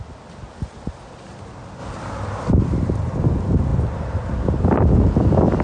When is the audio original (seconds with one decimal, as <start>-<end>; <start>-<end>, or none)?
0.0-5.6